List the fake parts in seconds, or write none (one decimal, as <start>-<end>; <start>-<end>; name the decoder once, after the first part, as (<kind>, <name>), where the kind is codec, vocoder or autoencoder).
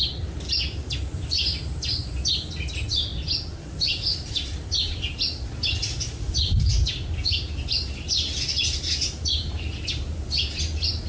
none